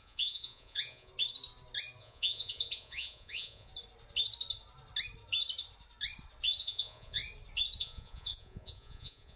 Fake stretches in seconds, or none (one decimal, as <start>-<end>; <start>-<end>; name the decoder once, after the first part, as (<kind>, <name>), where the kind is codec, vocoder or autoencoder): 0.0-1.1 (vocoder, Vocos); 2.0-3.7; 6.6-7.2; 7.8-9.4